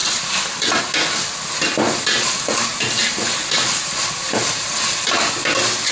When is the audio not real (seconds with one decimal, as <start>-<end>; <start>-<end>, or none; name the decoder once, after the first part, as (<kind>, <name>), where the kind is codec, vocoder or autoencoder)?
0.0-0.8 (vocoder, BigVGAN v2)